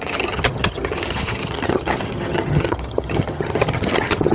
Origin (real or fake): fake